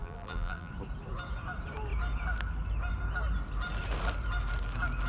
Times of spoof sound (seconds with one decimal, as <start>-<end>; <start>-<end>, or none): 0.0-0.7